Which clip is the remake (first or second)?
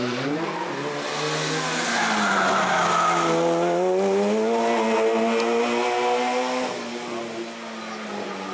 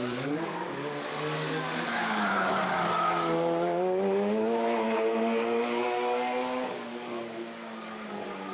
second